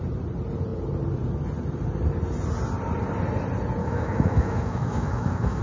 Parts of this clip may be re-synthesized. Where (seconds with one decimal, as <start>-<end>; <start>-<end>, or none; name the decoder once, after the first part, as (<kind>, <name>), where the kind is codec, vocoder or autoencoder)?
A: 3.8-5.6 (autoencoder, DAC-VAE)